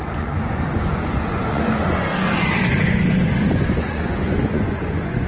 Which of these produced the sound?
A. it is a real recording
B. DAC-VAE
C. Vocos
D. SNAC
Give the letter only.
C